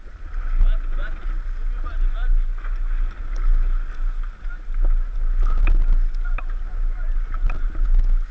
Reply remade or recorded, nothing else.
recorded